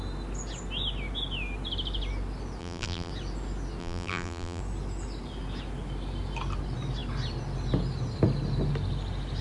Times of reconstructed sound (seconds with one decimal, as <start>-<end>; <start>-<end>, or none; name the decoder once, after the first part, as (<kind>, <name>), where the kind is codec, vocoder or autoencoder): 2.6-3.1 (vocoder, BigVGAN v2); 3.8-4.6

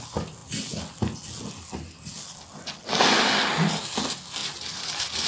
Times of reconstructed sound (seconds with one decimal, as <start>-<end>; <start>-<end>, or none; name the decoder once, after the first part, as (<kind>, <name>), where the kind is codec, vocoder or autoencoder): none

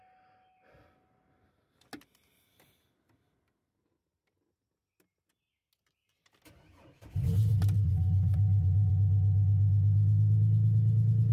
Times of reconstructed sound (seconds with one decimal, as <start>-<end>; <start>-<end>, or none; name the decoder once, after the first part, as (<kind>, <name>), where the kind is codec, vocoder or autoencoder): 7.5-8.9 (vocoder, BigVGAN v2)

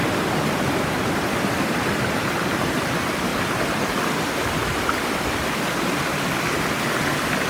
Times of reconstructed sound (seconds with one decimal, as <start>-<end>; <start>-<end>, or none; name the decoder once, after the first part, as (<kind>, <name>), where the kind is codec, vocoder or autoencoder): 0.0-3.3 (vocoder, BigVGAN v2); 6.6-7.5

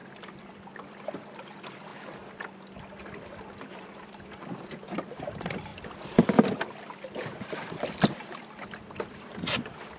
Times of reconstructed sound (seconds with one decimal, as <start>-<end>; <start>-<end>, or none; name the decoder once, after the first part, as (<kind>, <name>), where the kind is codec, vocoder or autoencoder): 0.0-1.9 (vocoder, BigVGAN v2); 3.6-10.0

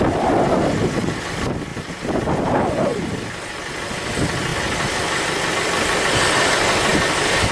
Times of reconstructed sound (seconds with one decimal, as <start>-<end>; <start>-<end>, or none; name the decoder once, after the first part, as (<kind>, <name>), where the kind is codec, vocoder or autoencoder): 1.7-2.2 (vocoder, BigVGAN v2); 4.5-5.5; 6.9-7.5

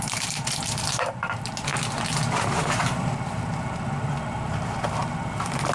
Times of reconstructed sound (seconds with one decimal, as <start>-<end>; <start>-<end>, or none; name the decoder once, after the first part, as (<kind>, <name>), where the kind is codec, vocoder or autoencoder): 0.0-1.7 (vocoder, BigVGAN v2); 2.6-5.7

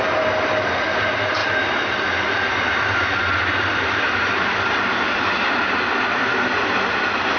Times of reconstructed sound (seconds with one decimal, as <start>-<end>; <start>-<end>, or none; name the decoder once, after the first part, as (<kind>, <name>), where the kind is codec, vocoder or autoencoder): 1.4-5.8 (vocoder, BigVGAN v2)